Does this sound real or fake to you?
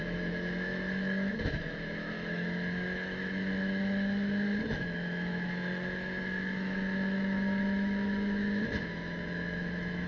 fake